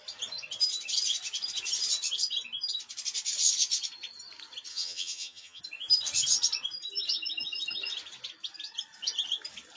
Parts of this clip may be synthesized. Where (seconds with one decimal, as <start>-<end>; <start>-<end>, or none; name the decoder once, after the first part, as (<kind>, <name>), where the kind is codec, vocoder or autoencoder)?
4.7-5.6 (vocoder, HiFi-GAN)